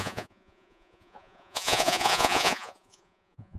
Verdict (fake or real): fake